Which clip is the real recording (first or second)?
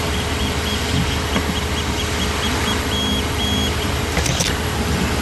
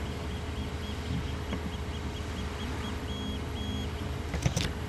second